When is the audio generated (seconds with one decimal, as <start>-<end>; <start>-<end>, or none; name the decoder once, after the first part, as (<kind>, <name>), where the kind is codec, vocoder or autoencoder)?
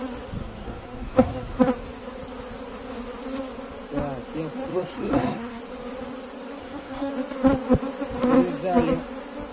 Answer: 0.4-1.6 (codec, SNAC); 4.7-5.6; 6.6-7.1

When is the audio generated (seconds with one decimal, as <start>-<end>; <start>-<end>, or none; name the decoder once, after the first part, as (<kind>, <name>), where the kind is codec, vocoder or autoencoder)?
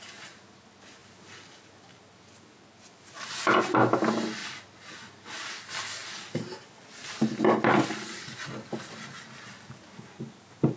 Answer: none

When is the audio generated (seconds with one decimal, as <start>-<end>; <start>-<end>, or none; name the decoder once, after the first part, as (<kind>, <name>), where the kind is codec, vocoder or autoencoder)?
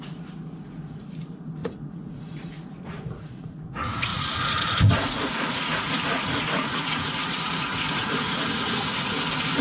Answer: 0.0-9.6 (vocoder, Vocos)